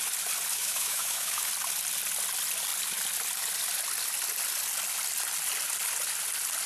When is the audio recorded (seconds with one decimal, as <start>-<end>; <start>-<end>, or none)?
0.0-0.5; 1.5-6.7